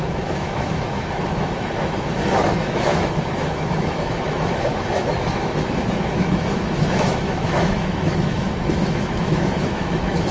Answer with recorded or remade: remade